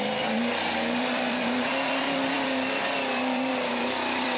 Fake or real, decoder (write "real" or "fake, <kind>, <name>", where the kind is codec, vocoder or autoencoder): fake, vocoder, BigVGAN v2